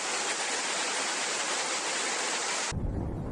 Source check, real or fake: fake